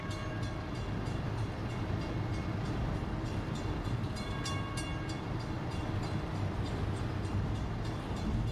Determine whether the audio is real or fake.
real